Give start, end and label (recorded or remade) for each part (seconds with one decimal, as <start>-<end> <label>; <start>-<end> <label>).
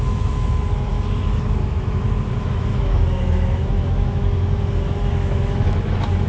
0.0-6.3 remade